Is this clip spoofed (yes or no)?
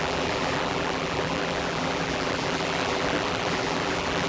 yes